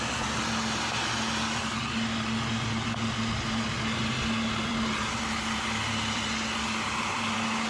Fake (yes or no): no